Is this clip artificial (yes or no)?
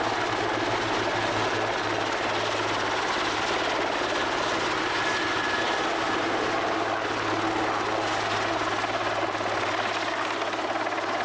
no